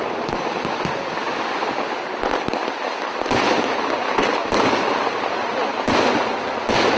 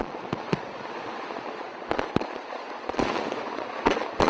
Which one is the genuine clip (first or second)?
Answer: first